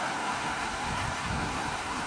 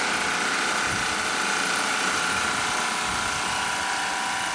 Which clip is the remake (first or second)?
first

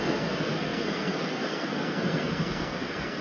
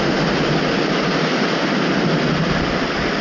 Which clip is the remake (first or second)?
first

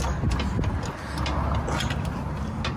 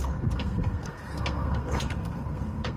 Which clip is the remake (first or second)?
second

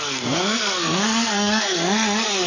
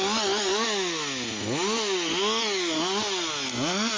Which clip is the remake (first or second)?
first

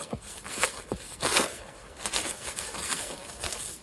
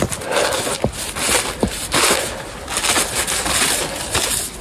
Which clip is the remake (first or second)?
first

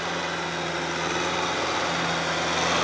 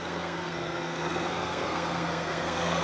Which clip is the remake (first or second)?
second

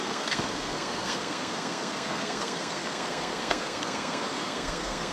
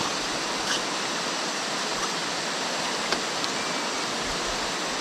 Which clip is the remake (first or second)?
first